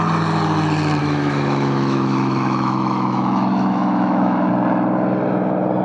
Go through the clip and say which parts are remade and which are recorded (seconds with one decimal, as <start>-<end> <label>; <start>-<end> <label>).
0.0-1.0 recorded; 1.0-4.5 remade; 4.5-5.8 recorded